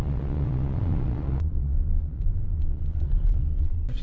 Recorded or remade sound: remade